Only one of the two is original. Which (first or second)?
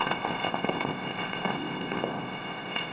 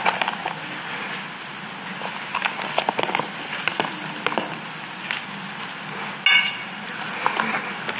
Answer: second